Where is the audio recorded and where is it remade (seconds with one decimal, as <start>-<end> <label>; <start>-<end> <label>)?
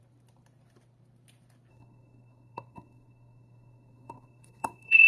0.0-1.7 recorded; 1.7-5.1 remade